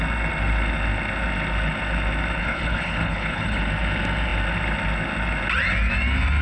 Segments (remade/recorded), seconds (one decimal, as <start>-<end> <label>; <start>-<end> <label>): 0.0-2.4 recorded; 2.4-3.6 remade; 3.6-6.4 recorded